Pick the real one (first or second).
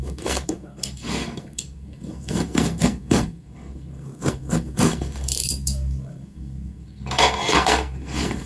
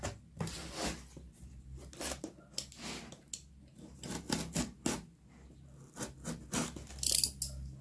second